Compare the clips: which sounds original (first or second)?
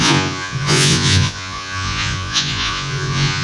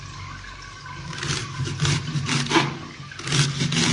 second